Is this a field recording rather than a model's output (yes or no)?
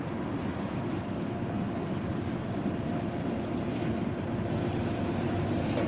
yes